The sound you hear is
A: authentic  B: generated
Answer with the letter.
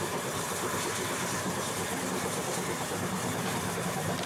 B